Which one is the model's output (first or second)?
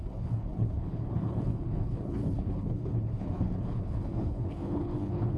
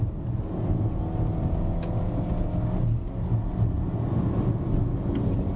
first